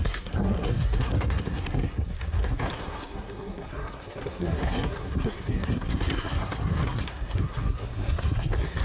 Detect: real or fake fake